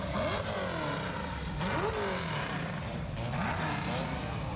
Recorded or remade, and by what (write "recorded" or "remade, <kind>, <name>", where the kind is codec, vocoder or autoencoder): recorded